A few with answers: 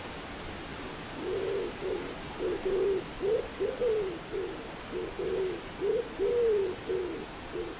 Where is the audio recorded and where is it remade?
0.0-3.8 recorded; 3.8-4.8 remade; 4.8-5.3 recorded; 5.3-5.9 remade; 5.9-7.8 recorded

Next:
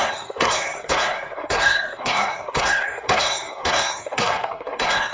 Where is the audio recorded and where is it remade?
0.0-5.1 remade

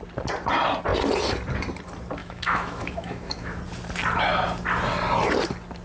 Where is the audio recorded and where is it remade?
0.0-2.2 recorded; 2.2-3.6 remade; 3.6-5.8 recorded

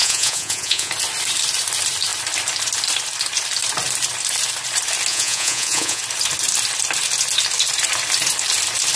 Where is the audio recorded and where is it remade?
0.0-0.9 remade; 0.9-5.1 recorded; 5.1-6.0 remade; 6.0-9.0 recorded

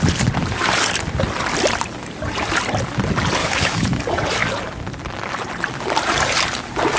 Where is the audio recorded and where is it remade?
0.0-3.4 recorded; 3.4-4.0 remade; 4.0-7.0 recorded

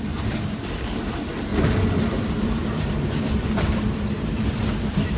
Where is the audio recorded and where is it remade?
0.0-1.5 recorded; 1.5-4.6 remade; 4.6-5.2 recorded